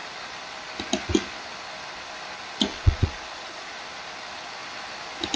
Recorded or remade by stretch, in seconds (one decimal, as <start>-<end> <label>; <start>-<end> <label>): 0.0-2.7 recorded; 2.7-3.7 remade; 3.7-5.4 recorded